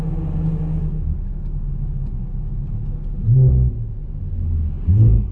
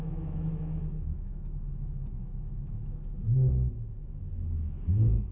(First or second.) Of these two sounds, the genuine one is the first